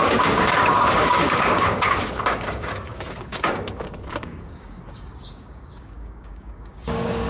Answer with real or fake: fake